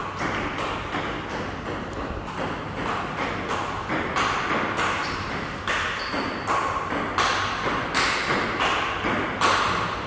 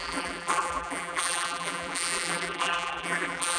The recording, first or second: first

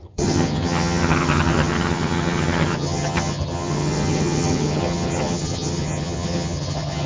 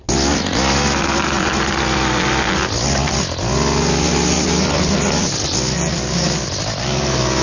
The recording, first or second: second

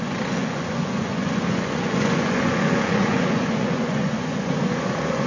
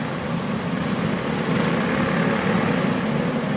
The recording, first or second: second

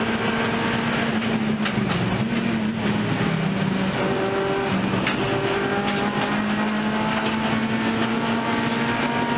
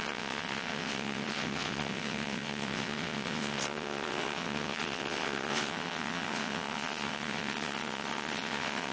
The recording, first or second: first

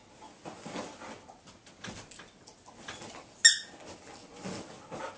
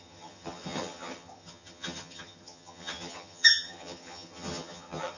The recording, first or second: first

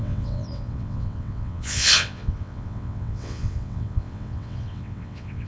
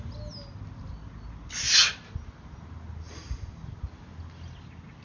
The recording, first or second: second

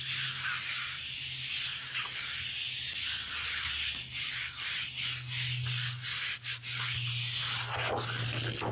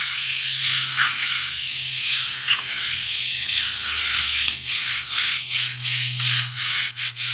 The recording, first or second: first